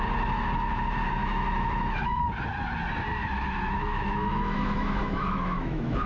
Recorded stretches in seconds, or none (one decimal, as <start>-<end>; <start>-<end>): 0.0-1.2; 2.2-3.2